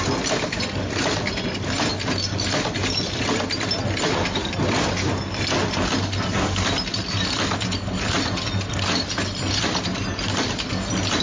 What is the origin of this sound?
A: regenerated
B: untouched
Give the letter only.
B